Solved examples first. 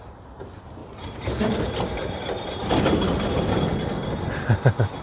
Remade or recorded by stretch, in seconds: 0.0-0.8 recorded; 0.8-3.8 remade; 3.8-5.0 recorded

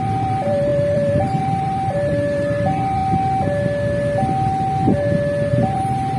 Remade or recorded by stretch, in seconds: 0.0-3.0 remade; 3.0-5.5 recorded; 5.5-6.2 remade

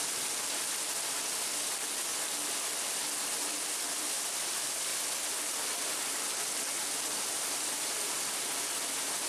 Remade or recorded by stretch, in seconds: 0.0-1.7 recorded; 1.7-2.1 remade; 2.1-3.5 recorded; 3.5-4.9 remade; 4.9-8.3 recorded; 8.3-9.3 remade

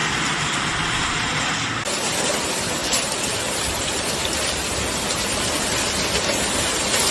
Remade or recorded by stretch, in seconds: 0.0-0.7 remade; 0.7-2.8 recorded; 2.8-5.9 remade; 5.9-7.1 recorded

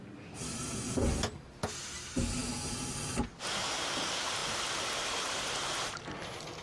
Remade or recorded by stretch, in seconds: 0.0-6.6 recorded

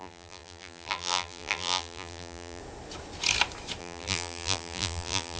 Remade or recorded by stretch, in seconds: 0.0-2.6 remade; 2.6-3.8 recorded; 3.8-5.4 remade